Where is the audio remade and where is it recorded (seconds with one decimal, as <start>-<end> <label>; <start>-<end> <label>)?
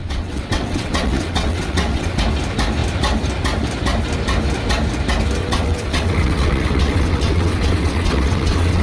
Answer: 0.0-2.2 remade; 2.2-5.4 recorded; 5.4-8.8 remade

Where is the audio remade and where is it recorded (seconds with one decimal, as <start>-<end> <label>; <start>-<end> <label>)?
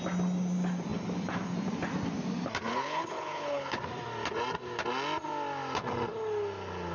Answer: 0.0-2.7 recorded; 2.7-3.8 remade; 3.8-6.9 recorded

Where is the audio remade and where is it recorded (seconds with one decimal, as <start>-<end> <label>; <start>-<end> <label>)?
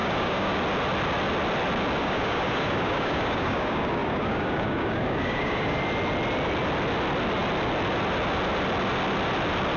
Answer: 0.0-0.6 remade; 0.6-2.0 recorded; 2.0-5.8 remade; 5.8-9.8 recorded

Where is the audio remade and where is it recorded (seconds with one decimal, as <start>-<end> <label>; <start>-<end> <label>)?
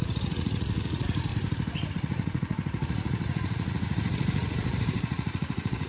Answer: 0.0-1.3 remade; 1.3-1.9 recorded; 1.9-5.9 remade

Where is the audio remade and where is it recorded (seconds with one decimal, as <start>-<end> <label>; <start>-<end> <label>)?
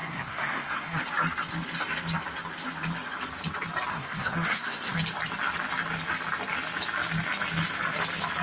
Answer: 0.0-1.0 remade; 1.0-3.9 recorded; 3.9-5.0 remade; 5.0-8.4 recorded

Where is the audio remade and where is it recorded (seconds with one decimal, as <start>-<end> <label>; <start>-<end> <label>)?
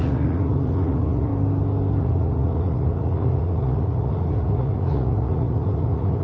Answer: 0.0-1.3 remade; 1.3-2.0 recorded; 2.0-6.2 remade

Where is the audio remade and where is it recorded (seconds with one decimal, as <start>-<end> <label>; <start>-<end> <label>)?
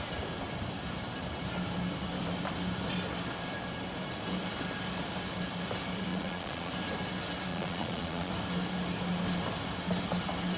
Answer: 0.0-6.1 recorded; 6.1-6.7 remade; 6.7-7.5 recorded; 7.5-8.3 remade; 8.3-10.6 recorded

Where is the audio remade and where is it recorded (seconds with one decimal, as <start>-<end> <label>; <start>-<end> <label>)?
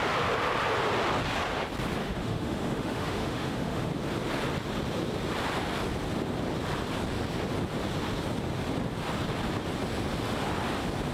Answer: 0.0-2.0 recorded; 2.0-3.9 remade; 3.9-11.1 recorded